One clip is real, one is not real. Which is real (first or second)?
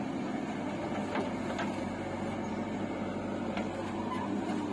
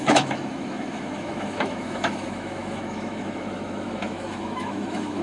first